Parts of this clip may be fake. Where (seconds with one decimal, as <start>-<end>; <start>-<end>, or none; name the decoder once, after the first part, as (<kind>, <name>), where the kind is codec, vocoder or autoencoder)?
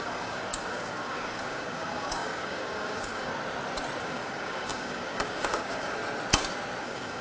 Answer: 0.0-3.3 (codec, DAC); 4.0-6.0; 6.8-7.2